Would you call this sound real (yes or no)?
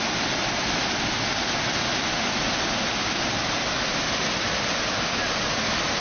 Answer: yes